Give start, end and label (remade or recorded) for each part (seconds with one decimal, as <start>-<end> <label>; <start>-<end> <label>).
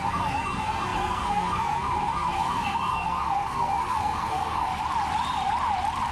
0.0-4.7 remade; 4.7-6.1 recorded